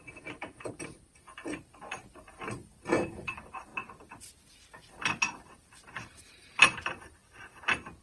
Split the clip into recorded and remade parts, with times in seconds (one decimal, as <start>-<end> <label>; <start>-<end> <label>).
0.0-3.7 remade; 3.7-4.9 recorded; 4.9-7.2 remade; 7.2-8.0 recorded